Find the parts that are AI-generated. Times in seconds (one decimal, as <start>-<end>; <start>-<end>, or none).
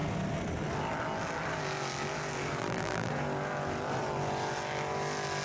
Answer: 2.6-3.1